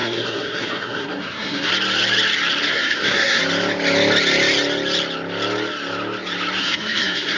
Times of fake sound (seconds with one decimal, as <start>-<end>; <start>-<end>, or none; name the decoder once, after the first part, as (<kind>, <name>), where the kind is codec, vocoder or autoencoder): 0.0-1.7 (codec, SNAC); 2.7-3.4; 6.6-7.4